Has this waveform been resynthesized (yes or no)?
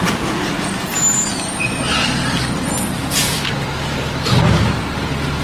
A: no